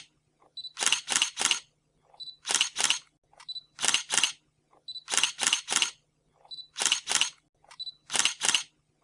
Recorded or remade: recorded